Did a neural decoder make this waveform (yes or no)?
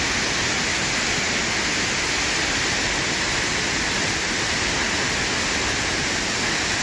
no